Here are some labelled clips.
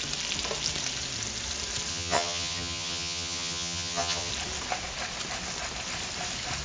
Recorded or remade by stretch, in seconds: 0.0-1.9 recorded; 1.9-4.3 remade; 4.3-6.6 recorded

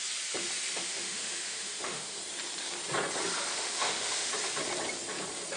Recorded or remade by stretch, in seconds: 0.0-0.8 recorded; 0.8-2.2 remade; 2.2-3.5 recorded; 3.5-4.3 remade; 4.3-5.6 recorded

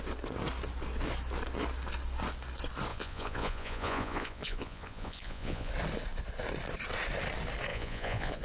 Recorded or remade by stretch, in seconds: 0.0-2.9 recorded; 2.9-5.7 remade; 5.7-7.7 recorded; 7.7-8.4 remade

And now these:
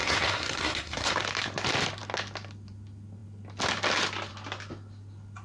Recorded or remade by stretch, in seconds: 0.0-1.1 remade; 1.1-5.4 recorded

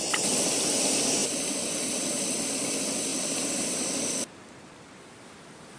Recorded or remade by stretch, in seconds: 0.0-1.2 remade; 1.2-1.7 recorded; 1.7-5.8 remade

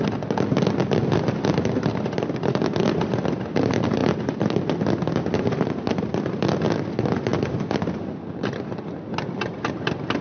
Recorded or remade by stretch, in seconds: 0.0-10.2 recorded

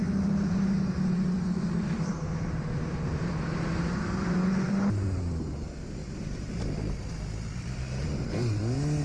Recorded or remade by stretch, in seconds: 0.0-5.2 remade; 5.2-6.0 recorded; 6.0-6.9 remade; 6.9-9.0 recorded